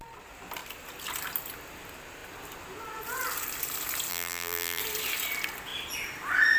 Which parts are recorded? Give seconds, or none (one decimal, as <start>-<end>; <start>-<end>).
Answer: 0.0-4.1; 4.8-6.6